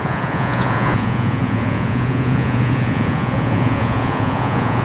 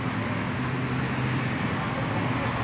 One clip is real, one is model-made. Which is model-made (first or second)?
first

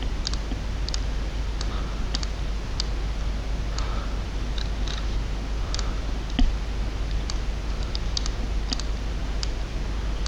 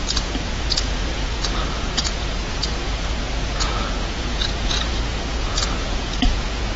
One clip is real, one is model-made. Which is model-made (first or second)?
second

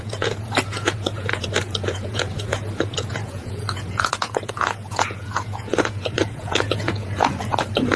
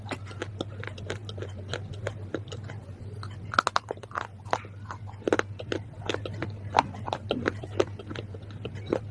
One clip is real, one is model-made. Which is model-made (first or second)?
first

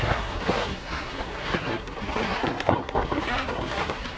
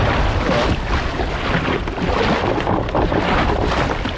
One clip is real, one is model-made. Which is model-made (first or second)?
first